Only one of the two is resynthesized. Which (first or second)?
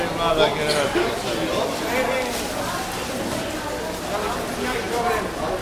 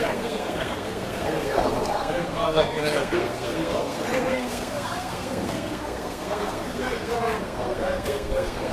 second